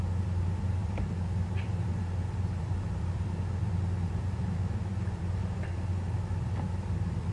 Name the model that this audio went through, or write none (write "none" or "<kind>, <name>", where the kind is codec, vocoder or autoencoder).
vocoder, BigVGAN v2